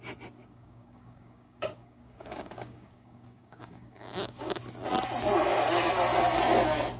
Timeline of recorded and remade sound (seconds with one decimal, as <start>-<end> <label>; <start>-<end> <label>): 0.0-0.4 recorded; 0.4-4.6 remade; 4.6-7.0 recorded